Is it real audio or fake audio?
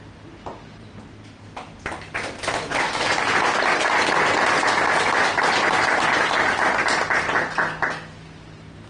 real